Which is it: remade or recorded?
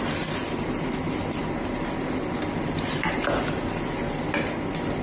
recorded